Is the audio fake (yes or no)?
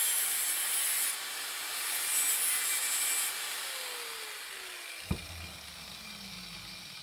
no